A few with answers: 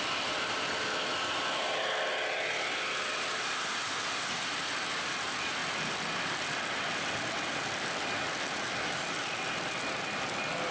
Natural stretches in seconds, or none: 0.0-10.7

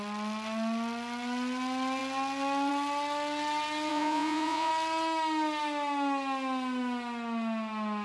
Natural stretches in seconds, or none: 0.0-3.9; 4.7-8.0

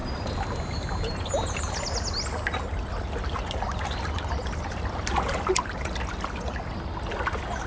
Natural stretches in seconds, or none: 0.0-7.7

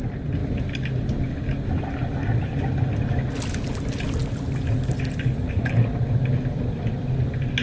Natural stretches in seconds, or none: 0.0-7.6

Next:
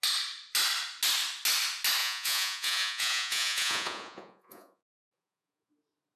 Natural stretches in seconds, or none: 0.0-2.0; 5.7-6.2

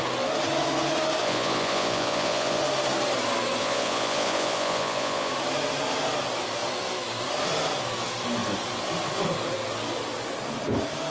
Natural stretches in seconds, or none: 0.0-1.2; 2.6-3.6; 5.3-11.1

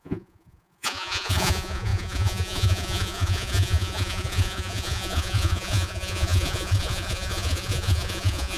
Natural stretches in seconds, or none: none

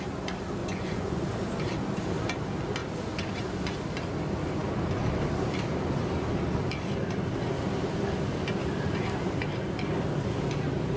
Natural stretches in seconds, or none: 0.0-0.6; 1.2-11.0